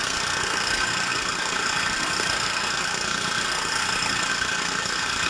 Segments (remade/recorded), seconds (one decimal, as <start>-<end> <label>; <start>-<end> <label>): 0.0-5.3 remade